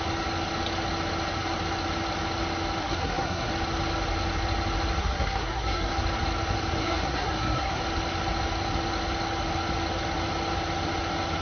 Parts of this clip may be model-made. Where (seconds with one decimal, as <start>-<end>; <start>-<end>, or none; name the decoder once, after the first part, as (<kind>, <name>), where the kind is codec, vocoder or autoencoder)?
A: 2.8-3.5 (codec, SNAC); 5.0-5.9; 6.8-7.8